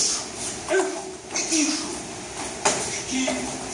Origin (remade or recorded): recorded